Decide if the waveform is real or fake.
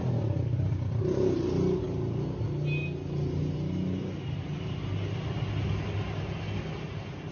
real